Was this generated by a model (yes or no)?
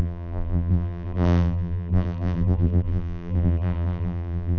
yes